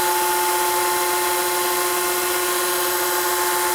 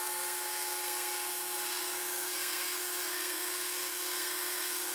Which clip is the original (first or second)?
first